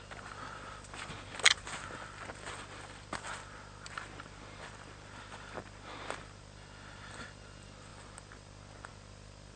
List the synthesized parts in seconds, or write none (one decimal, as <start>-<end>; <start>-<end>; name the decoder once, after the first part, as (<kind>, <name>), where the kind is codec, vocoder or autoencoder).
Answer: none